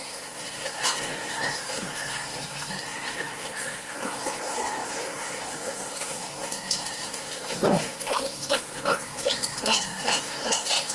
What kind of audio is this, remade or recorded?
remade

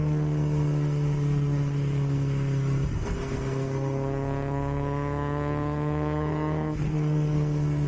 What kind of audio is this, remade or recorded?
remade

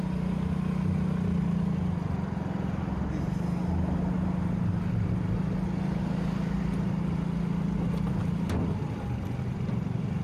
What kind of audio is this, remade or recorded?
recorded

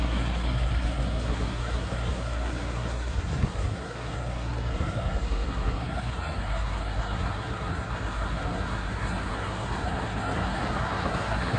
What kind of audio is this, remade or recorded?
remade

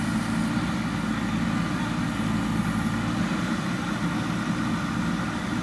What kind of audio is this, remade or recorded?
recorded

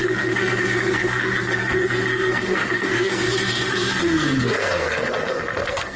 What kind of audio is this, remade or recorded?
remade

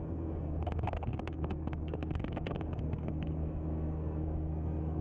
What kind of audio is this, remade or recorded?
remade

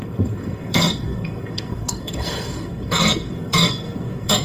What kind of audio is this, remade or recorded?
remade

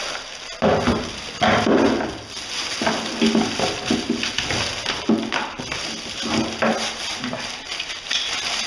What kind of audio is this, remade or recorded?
recorded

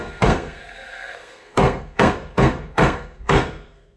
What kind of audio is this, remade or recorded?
remade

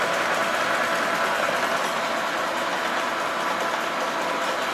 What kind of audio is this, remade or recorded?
recorded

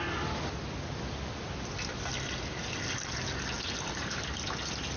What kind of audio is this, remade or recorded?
recorded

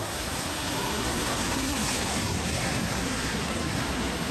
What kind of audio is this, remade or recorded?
remade